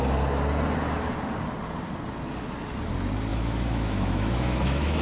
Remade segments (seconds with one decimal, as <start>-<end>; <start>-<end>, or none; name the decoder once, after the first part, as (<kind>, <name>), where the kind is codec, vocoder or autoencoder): 3.3-5.0 (autoencoder, DAC-VAE)